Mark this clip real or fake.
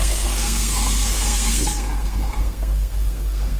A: fake